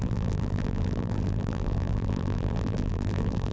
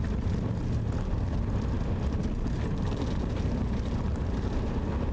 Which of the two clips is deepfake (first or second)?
first